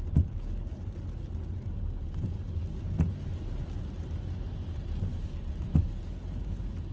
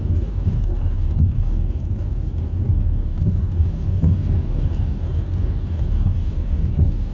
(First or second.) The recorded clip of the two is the first